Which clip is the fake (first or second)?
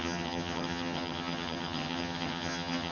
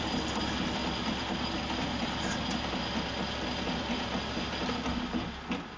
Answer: first